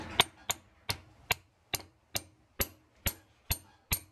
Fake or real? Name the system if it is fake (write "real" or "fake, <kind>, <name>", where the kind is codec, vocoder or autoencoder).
real